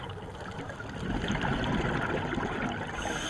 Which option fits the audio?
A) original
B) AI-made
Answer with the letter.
A